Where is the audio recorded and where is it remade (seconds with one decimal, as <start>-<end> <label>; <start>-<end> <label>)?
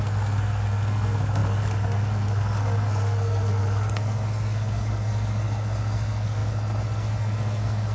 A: 0.0-7.9 remade